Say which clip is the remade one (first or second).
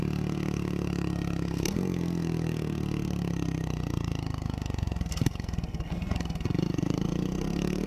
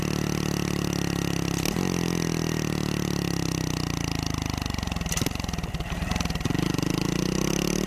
first